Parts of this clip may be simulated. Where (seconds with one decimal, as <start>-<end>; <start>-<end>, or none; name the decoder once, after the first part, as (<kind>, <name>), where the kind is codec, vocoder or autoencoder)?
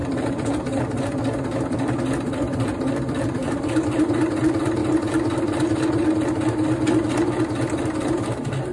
0.0-0.8 (vocoder, BigVGAN v2); 3.4-4.1